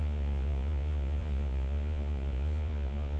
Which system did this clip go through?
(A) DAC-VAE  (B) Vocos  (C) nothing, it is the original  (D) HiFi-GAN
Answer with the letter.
B